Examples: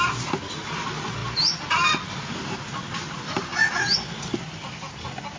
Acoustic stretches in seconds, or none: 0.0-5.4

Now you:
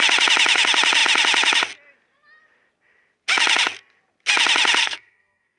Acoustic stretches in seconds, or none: 0.0-4.8

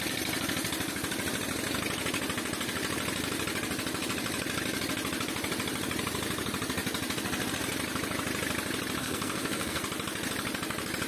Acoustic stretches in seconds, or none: 0.0-9.0; 9.8-11.1

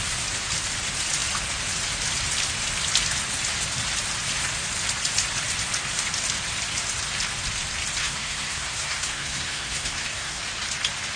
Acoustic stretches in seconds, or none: 0.0-8.0; 10.4-11.2

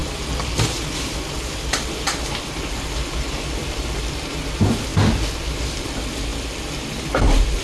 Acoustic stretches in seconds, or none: 0.0-7.6

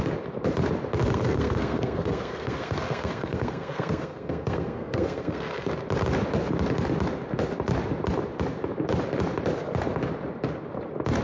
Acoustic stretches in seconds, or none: 0.0-1.0; 5.7-11.2

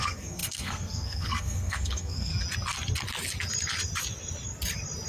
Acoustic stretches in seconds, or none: 2.3-5.1

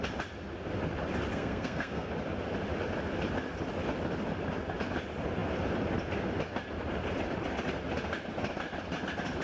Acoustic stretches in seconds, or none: 0.0-1.3; 2.1-9.4